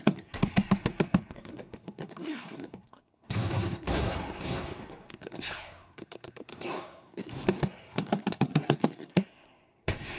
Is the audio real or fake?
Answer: fake